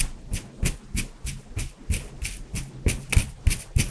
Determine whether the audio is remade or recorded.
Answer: recorded